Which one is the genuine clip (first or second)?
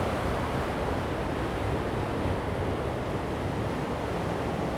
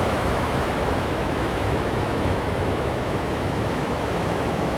first